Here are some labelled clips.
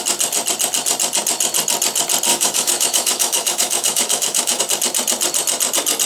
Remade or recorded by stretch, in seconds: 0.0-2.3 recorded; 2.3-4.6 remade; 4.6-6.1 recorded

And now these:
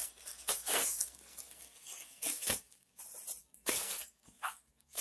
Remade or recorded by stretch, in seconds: 0.0-3.0 remade; 3.0-3.4 recorded; 3.4-5.0 remade

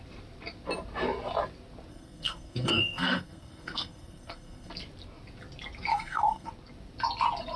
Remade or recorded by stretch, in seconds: 0.0-1.9 recorded; 1.9-4.7 remade; 4.7-5.9 recorded; 5.9-6.5 remade; 6.5-7.6 recorded

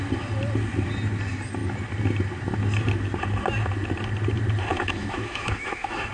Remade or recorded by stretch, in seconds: 0.0-4.7 recorded; 4.7-6.1 remade

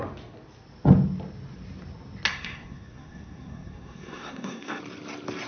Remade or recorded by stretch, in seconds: 0.0-2.3 recorded; 2.3-4.8 remade; 4.8-5.5 recorded